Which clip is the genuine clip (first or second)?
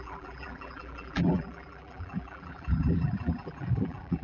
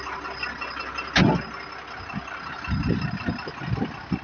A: second